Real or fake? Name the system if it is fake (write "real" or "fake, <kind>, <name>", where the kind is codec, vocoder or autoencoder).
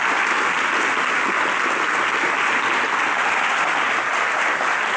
real